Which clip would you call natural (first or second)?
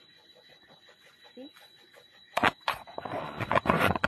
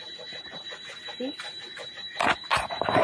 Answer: second